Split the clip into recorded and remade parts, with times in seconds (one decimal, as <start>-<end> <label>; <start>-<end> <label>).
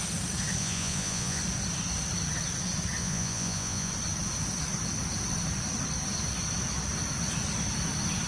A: 0.0-0.6 recorded; 0.6-1.4 remade; 1.4-3.0 recorded; 3.0-3.9 remade; 3.9-8.3 recorded